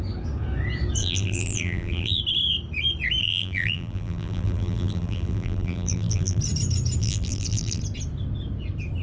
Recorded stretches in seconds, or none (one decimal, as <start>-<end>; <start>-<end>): 0.0-1.0; 2.2-3.2; 6.4-7.0; 7.8-9.0